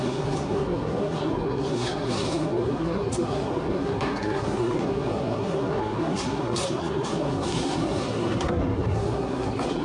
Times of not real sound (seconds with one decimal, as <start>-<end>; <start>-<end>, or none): 0.0-9.8